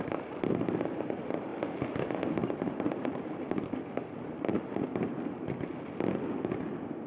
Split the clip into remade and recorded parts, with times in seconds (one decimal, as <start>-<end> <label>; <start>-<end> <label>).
0.0-1.5 remade; 1.5-2.3 recorded; 2.3-5.7 remade; 5.7-7.1 recorded